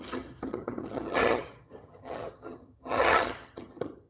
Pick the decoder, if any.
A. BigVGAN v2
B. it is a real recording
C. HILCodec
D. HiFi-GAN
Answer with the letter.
D